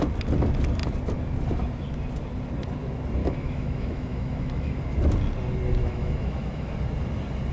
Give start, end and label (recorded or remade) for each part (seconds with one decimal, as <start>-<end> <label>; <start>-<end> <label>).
0.0-3.2 recorded; 3.2-4.8 remade; 4.8-5.8 recorded; 5.8-6.7 remade; 6.7-7.5 recorded